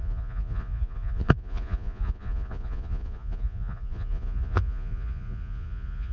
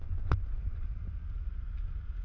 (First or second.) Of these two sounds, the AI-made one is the first